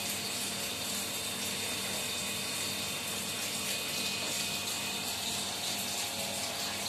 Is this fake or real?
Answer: real